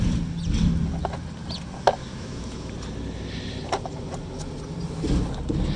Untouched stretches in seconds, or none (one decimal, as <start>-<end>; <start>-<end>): 0.0-2.1; 2.7-5.8

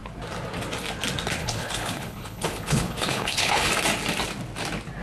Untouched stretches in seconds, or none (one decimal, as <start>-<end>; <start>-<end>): 0.0-1.4; 3.7-5.0

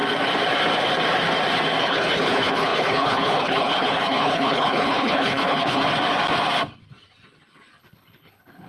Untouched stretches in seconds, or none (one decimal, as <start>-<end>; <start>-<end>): 0.0-1.8; 5.8-7.8

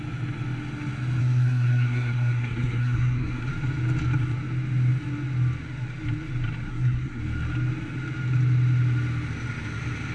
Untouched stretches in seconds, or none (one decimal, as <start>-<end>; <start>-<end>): 0.0-1.2; 3.5-6.7; 7.2-10.1

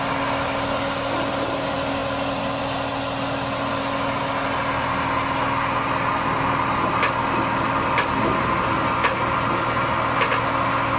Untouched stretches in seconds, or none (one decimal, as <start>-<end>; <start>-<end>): 0.0-11.0